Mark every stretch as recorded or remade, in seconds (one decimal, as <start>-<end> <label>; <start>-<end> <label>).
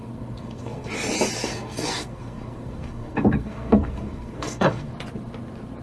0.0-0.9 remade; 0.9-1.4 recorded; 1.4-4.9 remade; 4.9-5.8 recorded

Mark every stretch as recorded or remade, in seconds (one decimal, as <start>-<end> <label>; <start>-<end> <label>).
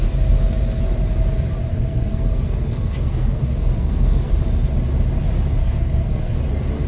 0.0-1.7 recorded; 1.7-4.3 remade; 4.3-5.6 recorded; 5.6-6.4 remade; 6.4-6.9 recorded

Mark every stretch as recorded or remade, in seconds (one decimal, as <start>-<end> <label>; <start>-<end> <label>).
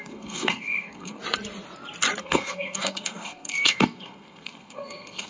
0.0-1.2 remade; 1.2-2.2 recorded; 2.2-5.3 remade